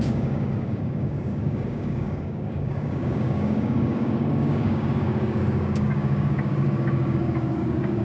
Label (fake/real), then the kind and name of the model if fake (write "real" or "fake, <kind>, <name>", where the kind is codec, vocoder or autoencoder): fake, codec, DAC